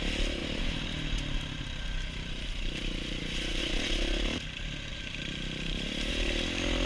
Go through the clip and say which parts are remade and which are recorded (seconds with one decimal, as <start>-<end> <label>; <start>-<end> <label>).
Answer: 0.0-0.4 recorded; 0.4-3.6 remade; 3.6-4.9 recorded; 4.9-6.1 remade; 6.1-6.9 recorded